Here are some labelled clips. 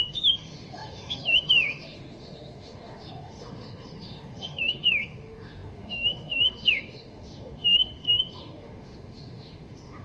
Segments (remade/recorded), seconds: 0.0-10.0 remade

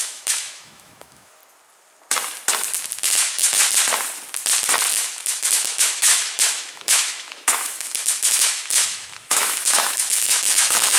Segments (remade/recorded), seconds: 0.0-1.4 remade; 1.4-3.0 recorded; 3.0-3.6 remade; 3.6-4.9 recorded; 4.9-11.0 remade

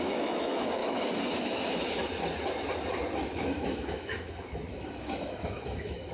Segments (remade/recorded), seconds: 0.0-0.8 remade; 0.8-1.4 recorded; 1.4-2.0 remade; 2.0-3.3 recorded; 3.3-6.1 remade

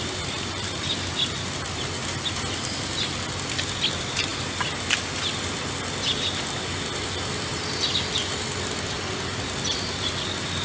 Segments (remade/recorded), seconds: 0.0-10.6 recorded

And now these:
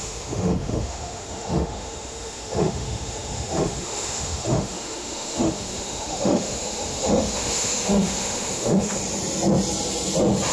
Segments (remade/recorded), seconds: 0.0-9.0 remade; 9.0-10.5 recorded